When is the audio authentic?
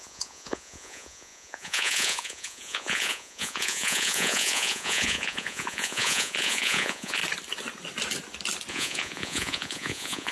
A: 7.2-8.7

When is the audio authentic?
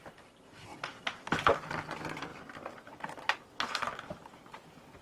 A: 0.0-5.0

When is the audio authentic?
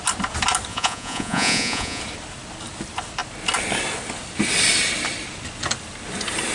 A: 0.0-0.7; 2.0-6.5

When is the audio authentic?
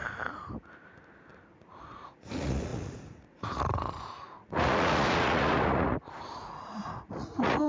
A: 0.0-1.8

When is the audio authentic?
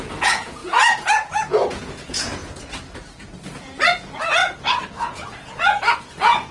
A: 2.4-3.6; 4.4-4.9